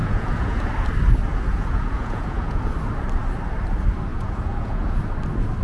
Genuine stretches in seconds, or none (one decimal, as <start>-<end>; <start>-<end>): 0.7-1.3; 2.6-4.1; 5.0-5.6